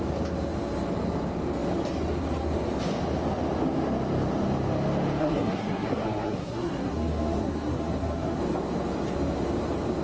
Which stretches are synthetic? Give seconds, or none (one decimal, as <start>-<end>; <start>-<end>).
5.2-8.4